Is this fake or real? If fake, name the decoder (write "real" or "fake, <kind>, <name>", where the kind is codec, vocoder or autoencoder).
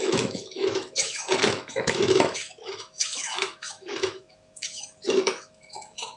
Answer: fake, autoencoder, DAC-VAE